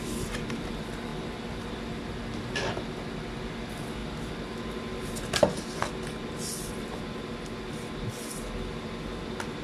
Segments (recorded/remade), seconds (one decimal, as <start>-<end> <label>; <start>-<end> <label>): 0.0-9.6 recorded